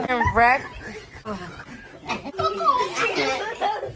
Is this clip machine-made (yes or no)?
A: no